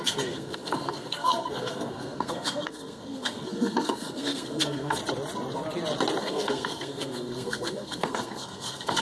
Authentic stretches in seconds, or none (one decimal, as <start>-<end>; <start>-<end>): 5.0-6.2